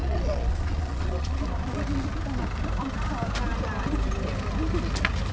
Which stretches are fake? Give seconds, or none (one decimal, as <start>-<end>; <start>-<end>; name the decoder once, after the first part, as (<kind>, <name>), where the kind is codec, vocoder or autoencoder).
0.0-1.4 (vocoder, Vocos)